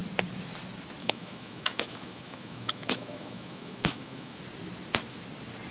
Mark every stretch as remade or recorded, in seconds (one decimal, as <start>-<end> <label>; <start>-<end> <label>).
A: 0.0-1.0 recorded; 1.0-4.4 remade; 4.4-5.7 recorded